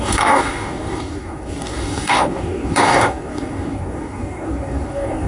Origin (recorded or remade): remade